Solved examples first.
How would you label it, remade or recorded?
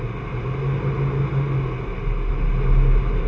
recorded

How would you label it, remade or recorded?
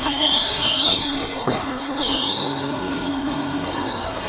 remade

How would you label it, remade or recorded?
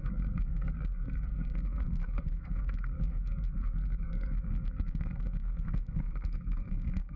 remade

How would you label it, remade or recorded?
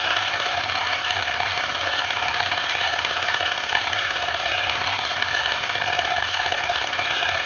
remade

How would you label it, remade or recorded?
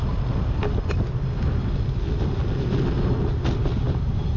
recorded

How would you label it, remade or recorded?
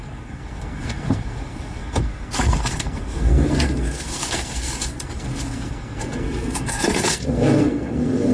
remade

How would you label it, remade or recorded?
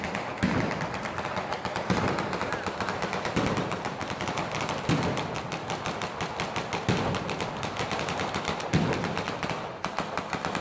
recorded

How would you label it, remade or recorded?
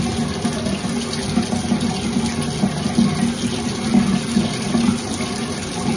recorded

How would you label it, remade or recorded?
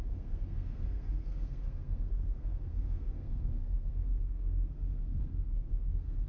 remade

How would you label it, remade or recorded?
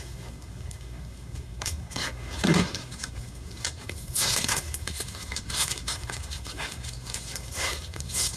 remade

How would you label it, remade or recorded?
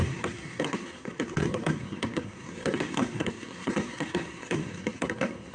remade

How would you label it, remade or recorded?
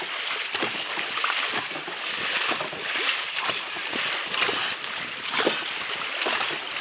recorded